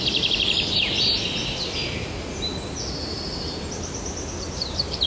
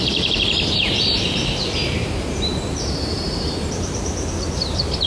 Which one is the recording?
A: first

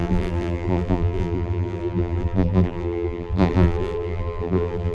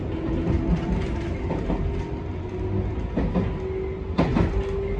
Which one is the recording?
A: second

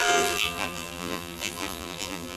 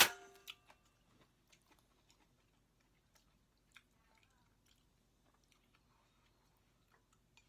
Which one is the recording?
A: second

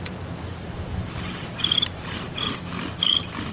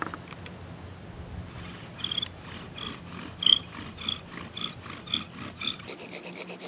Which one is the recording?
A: second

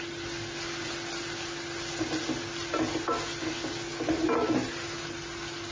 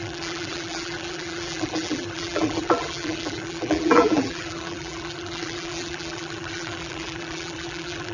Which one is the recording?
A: first